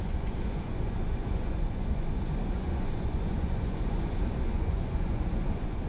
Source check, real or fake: fake